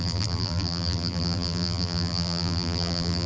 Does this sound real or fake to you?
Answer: fake